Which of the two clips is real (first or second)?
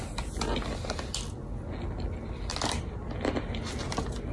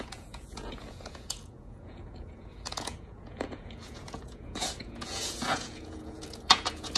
first